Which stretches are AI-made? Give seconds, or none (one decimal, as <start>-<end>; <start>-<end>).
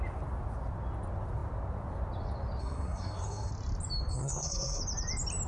2.6-3.5; 4.1-4.8